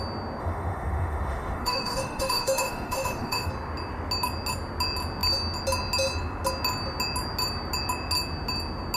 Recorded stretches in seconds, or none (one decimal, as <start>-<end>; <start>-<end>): 0.0-0.4; 3.5-9.0